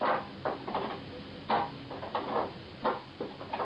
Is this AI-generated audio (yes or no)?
no